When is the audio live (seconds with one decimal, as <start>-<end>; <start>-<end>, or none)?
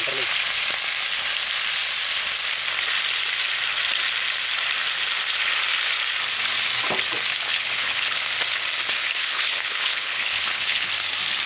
0.0-7.3; 8.2-9.2; 10.9-11.5